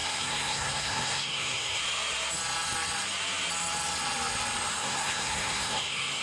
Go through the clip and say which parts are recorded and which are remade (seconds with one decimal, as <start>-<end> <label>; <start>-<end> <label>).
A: 0.0-1.8 remade; 1.8-4.7 recorded; 4.7-6.2 remade